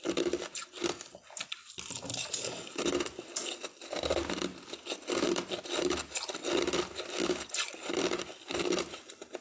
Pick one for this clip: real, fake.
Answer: real